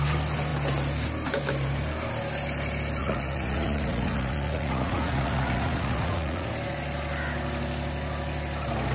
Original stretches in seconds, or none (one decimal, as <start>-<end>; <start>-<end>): 0.0-3.0; 6.5-8.9